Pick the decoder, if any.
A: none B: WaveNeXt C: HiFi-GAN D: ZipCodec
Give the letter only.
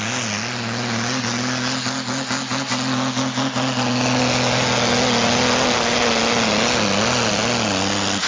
A